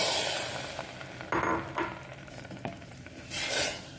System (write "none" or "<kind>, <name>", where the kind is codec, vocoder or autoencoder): none